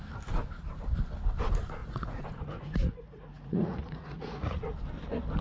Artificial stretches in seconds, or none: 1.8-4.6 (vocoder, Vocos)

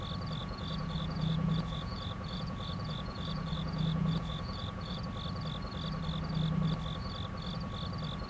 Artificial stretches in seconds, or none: 0.4-5.0 (vocoder, Vocos)